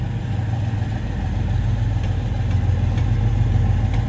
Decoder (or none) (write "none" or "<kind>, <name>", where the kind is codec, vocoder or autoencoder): none